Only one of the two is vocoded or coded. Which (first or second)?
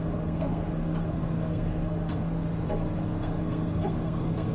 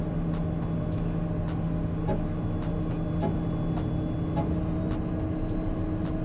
first